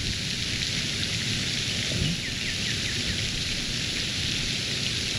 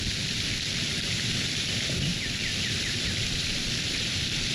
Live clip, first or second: first